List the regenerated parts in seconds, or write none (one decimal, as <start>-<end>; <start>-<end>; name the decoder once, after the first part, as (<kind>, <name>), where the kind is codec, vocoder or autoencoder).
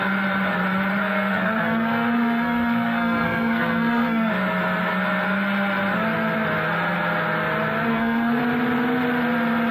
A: 1.0-4.3 (codec, SNAC); 7.9-8.4